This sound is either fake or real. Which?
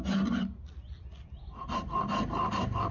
real